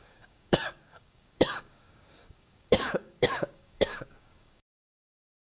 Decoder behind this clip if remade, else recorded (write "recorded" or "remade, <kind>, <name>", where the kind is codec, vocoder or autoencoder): remade, codec, DAC